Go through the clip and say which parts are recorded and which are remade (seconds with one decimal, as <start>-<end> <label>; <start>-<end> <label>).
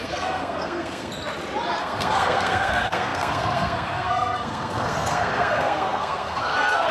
0.0-1.1 remade; 1.1-1.8 recorded; 1.8-6.9 remade